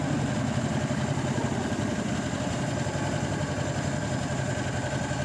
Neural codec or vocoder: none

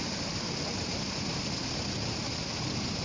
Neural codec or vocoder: none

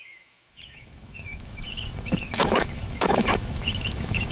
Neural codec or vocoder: autoencoder, DAC-VAE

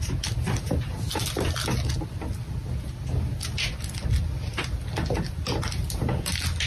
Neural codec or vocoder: none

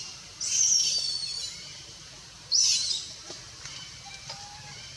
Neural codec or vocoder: vocoder, BigVGAN v2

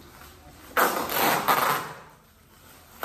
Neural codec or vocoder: none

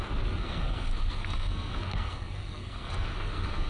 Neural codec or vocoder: codec, SNAC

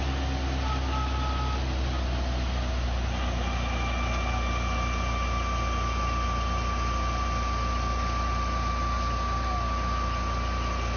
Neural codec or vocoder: none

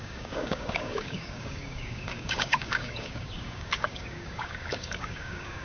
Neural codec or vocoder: codec, DAC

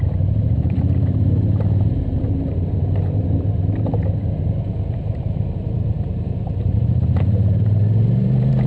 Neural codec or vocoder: vocoder, BigVGAN v2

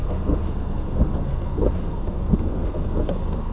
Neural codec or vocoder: codec, SNAC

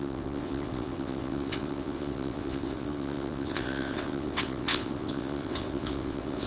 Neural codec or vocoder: vocoder, WaveNeXt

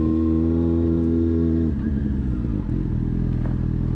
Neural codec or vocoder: none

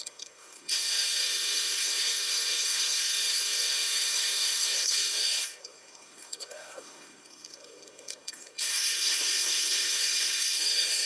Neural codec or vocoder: codec, SNAC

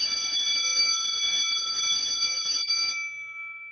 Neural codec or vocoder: codec, DAC